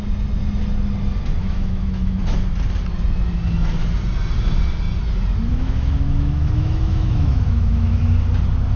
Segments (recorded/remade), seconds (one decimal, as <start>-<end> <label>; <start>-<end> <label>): 0.0-1.4 recorded; 1.4-2.2 remade; 2.2-5.5 recorded; 5.5-8.0 remade; 8.0-8.8 recorded

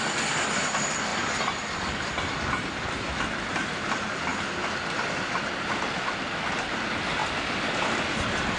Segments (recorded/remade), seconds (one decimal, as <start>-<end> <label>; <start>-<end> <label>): 0.0-8.6 recorded

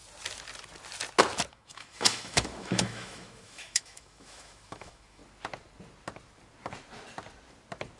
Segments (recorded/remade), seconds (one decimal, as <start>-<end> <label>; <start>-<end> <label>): 0.0-1.5 recorded; 1.5-5.2 remade; 5.2-8.0 recorded

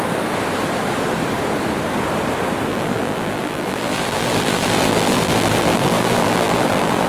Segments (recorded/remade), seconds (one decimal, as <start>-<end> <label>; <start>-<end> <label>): 0.0-2.7 recorded; 2.7-7.1 remade

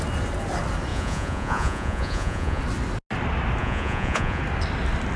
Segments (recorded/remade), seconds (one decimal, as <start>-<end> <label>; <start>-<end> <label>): 0.0-0.9 recorded; 0.9-2.6 remade; 2.6-3.6 recorded; 3.6-4.4 remade; 4.4-5.2 recorded

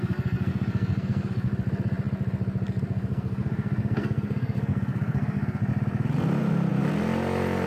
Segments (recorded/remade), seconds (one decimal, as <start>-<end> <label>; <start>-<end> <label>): 0.0-1.5 remade; 1.5-2.8 recorded; 2.8-5.6 remade; 5.6-7.7 recorded